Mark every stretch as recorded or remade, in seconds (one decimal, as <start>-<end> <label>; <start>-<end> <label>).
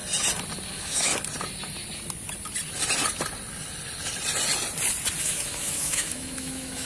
0.0-0.7 recorded; 0.7-1.1 remade; 1.1-5.2 recorded; 5.2-6.9 remade